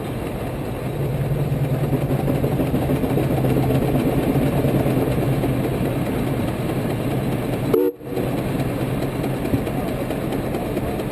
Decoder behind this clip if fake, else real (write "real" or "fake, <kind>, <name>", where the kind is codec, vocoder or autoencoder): real